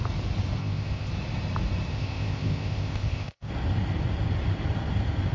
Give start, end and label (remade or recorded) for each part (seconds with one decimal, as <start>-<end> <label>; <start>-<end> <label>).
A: 0.0-0.6 recorded; 0.6-1.1 remade; 1.1-1.9 recorded; 1.9-3.5 remade; 3.5-5.3 recorded